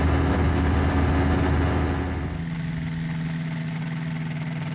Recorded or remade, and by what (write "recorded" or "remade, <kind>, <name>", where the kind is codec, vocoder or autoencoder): recorded